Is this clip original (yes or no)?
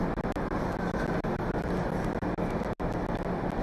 yes